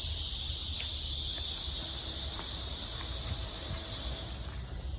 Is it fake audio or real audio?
real